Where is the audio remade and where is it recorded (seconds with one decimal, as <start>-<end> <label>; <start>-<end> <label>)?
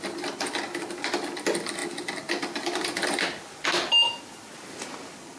0.0-5.4 recorded